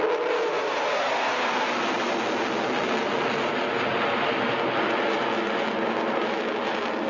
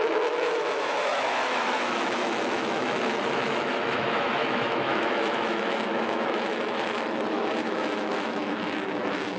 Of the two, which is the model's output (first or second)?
second